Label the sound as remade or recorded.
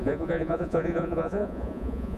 remade